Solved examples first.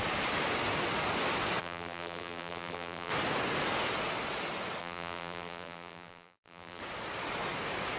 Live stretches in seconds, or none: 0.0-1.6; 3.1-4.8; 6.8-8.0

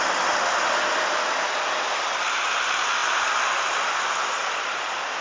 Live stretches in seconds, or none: 0.0-5.2

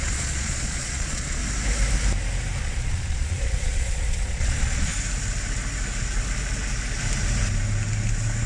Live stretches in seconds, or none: 1.4-2.6; 4.9-8.5

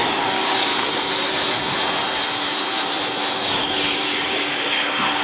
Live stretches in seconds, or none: 0.7-3.3

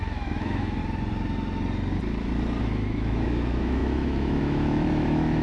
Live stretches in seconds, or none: 0.8-2.6

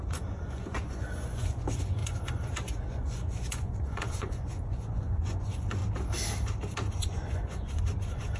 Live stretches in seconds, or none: 5.8-6.9